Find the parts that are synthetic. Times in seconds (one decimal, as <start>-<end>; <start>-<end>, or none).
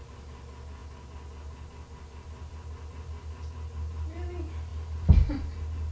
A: none